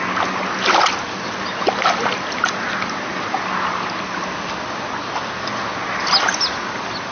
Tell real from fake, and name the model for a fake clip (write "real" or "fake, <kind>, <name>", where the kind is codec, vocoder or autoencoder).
real